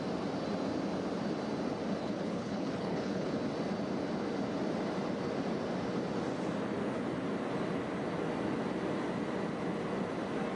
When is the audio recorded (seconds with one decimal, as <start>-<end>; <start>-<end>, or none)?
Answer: 0.0-2.0; 3.3-10.6